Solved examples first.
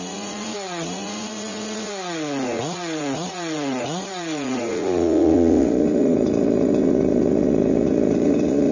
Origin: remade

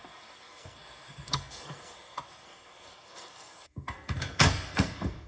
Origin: remade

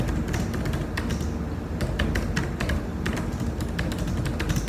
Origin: recorded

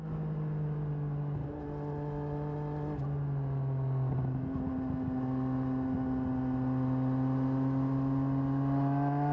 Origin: recorded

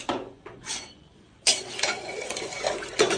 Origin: remade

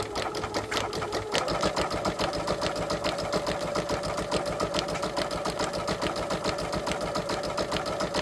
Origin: recorded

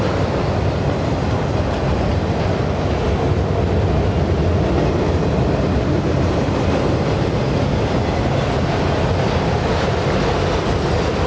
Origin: recorded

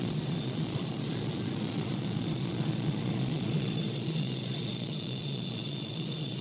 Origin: remade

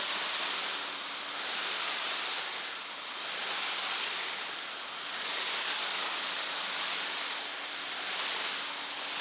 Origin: recorded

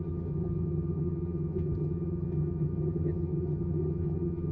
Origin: remade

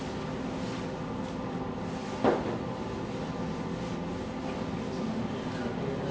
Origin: recorded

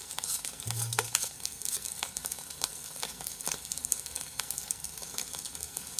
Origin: remade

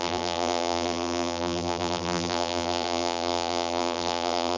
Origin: remade